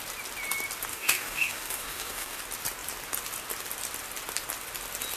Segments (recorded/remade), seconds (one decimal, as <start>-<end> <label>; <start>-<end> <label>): 0.0-0.9 recorded; 0.9-2.4 remade; 2.4-5.2 recorded